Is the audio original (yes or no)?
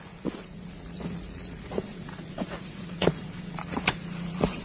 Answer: no